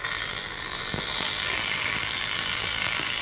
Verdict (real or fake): fake